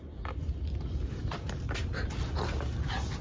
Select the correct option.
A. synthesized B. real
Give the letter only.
B